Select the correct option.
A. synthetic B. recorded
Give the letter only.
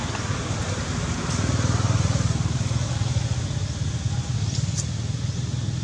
B